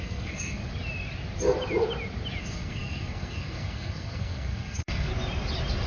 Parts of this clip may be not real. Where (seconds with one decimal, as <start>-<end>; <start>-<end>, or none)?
0.0-0.6; 2.4-5.1